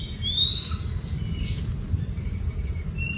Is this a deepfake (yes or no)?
no